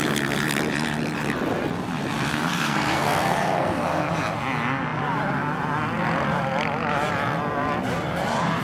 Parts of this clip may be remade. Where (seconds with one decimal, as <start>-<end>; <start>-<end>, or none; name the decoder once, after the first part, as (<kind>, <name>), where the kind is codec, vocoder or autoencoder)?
2.3-4.1 (codec, SNAC)